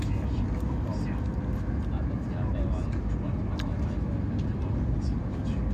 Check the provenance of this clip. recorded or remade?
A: recorded